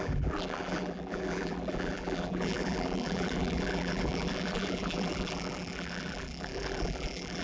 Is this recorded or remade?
remade